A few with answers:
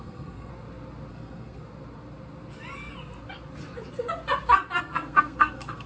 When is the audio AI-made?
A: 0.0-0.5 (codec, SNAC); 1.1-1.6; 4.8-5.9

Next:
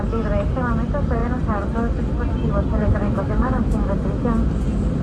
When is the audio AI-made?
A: 2.8-3.9 (autoencoder, DAC-VAE)